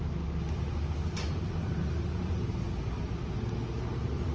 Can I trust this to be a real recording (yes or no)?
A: yes